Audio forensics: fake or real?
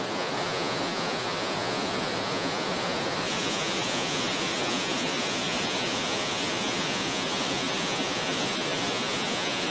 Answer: fake